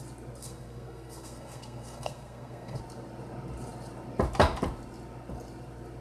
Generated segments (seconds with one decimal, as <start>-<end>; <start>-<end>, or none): 0.4-2.8